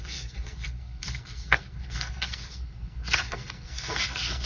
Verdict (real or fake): fake